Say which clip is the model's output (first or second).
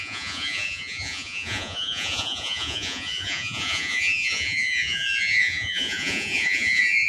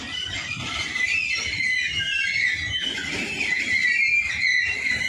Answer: first